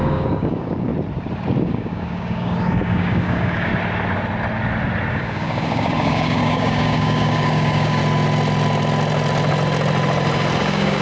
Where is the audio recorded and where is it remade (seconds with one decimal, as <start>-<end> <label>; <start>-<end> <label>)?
0.0-0.9 remade; 0.9-1.6 recorded; 1.6-3.7 remade; 3.7-5.1 recorded; 5.1-8.0 remade; 8.0-10.6 recorded; 10.6-11.0 remade